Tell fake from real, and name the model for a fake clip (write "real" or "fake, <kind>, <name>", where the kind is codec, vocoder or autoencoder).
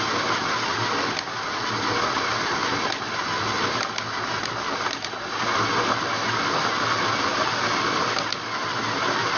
real